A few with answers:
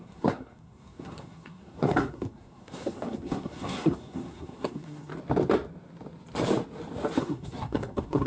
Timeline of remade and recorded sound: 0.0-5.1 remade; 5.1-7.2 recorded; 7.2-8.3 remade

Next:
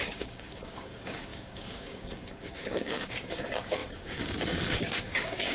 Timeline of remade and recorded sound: 0.0-5.5 remade